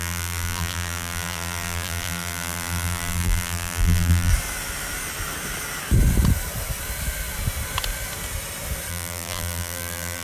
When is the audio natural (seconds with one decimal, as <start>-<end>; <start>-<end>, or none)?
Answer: 4.3-8.9